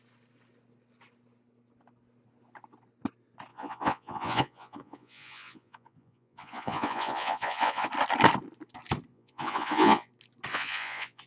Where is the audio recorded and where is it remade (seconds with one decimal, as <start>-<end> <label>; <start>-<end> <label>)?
0.0-3.5 recorded; 3.5-7.9 remade; 7.9-9.1 recorded; 9.1-10.1 remade; 10.1-10.5 recorded; 10.5-11.3 remade